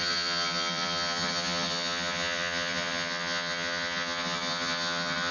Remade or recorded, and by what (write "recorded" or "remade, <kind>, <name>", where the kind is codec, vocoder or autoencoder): remade, vocoder, HiFi-GAN